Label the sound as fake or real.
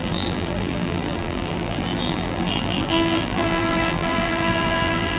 fake